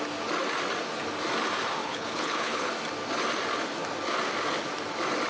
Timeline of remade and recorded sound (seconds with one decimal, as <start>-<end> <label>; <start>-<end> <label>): 0.0-1.8 recorded; 1.8-2.7 remade; 2.7-5.3 recorded